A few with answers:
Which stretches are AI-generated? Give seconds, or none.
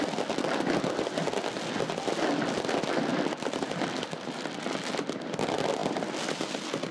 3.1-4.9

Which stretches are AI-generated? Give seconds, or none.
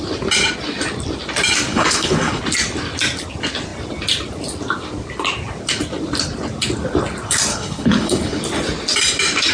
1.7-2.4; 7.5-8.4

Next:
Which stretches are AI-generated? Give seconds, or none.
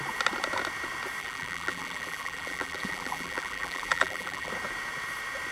1.2-4.5